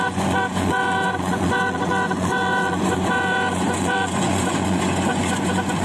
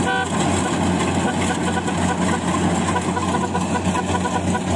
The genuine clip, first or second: second